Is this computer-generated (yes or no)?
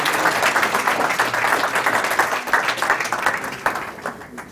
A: no